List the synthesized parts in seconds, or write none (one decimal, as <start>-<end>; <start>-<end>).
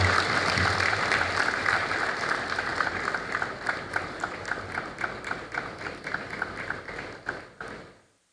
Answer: none